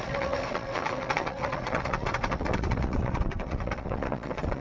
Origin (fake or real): fake